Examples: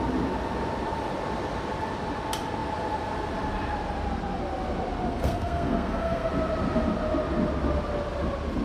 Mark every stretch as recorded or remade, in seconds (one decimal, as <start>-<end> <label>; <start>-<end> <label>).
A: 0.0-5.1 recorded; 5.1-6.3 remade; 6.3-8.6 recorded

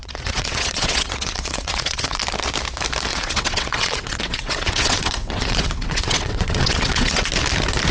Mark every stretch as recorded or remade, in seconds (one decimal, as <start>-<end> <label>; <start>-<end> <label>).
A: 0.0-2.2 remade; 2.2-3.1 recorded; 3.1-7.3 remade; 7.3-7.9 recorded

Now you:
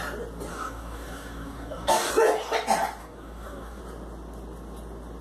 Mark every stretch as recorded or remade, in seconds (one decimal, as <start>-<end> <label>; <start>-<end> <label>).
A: 0.0-0.5 recorded; 0.5-2.1 remade; 2.1-3.0 recorded; 3.0-3.8 remade; 3.8-5.2 recorded

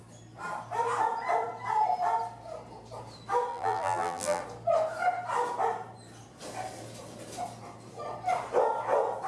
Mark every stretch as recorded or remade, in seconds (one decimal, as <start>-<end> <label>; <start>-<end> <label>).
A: 0.0-3.5 recorded; 3.5-4.4 remade; 4.4-9.3 recorded